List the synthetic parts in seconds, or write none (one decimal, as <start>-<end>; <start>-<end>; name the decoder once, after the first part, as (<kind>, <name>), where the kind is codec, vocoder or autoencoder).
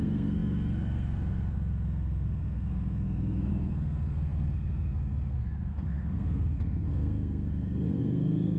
0.0-8.6 (codec, SNAC)